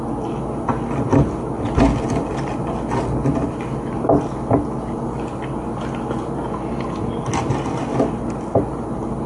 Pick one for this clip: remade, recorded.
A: recorded